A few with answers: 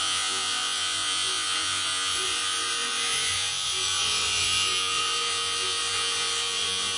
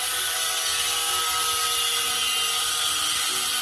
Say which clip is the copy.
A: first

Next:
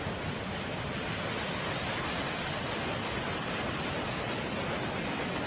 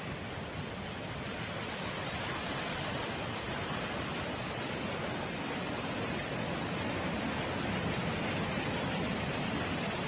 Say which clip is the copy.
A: second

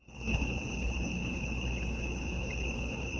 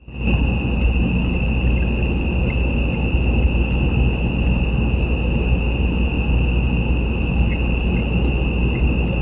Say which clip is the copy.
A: first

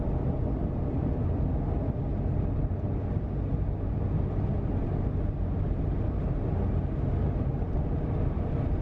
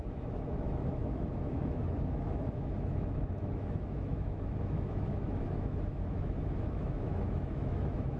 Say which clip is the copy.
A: second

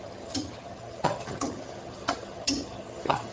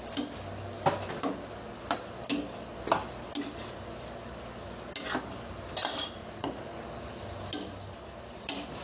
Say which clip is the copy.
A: first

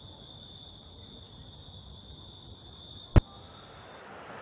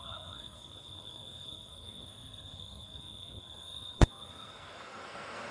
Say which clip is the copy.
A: second